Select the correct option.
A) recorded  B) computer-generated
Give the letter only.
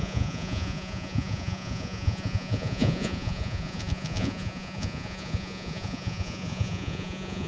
B